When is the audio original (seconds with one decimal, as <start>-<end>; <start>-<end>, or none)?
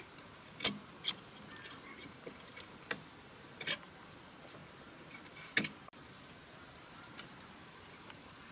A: 0.0-8.5